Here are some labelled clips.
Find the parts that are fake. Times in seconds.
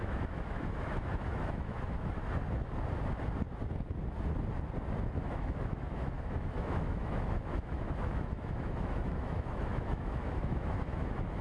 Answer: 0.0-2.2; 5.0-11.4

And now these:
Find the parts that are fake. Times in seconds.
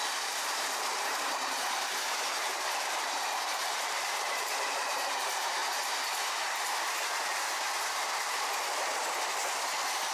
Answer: 0.0-5.6